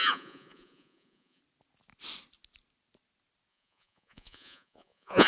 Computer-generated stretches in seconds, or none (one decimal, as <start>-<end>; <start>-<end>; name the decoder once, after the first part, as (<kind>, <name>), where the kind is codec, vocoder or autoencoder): 0.0-1.4 (vocoder, Vocos); 3.5-5.3